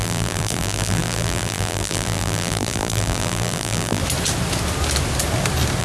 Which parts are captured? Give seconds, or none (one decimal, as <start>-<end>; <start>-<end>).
4.0-5.8